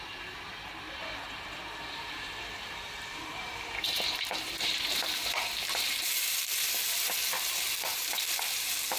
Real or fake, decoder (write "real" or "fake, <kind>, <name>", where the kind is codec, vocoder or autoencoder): fake, vocoder, BigVGAN v2